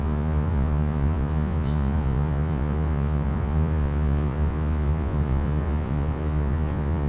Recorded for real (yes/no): no